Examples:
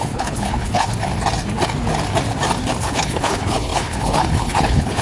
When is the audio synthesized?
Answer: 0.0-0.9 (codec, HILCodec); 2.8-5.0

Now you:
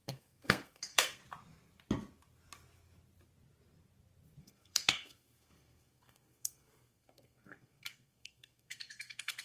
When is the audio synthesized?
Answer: 0.0-1.2 (codec, SNAC); 4.4-9.4

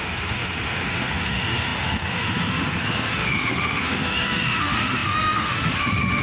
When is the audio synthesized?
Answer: 0.0-6.2 (autoencoder, DAC-VAE)

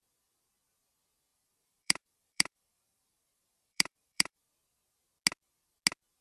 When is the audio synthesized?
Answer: 1.3-4.4 (vocoder, BigVGAN v2)

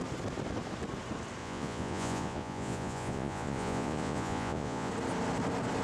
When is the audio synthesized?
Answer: 1.4-4.9 (vocoder, Vocos)

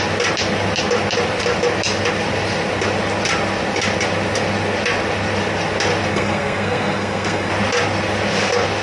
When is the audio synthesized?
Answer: 6.1-7.5 (codec, SNAC)

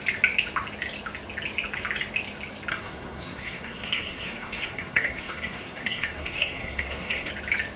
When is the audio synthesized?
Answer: 2.7-7.3 (codec, SNAC)